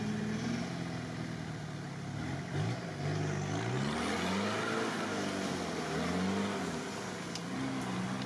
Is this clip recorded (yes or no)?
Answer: yes